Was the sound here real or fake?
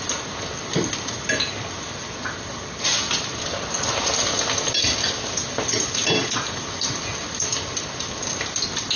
real